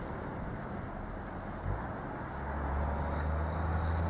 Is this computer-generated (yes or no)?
no